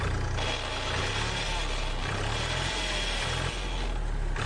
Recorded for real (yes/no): yes